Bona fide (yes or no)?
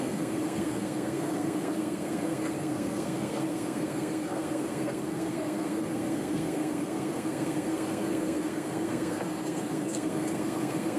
no